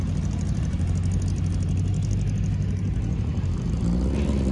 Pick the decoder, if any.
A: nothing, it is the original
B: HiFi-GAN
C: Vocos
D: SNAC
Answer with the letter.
A